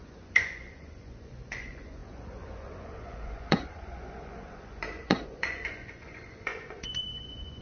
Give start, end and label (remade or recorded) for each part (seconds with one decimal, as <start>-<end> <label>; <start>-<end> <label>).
0.0-7.6 remade